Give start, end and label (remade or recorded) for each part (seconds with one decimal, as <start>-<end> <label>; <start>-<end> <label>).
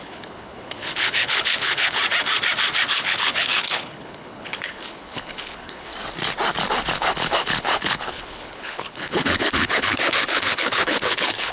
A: 0.0-2.0 remade; 2.0-2.9 recorded; 2.9-5.9 remade; 5.9-6.7 recorded; 6.7-11.5 remade